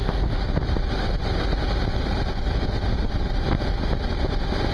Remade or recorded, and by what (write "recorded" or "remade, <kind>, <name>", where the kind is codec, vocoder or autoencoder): recorded